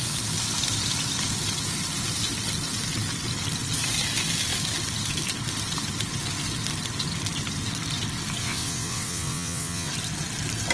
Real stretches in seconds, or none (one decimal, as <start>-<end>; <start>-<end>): 0.0-8.4; 9.9-10.7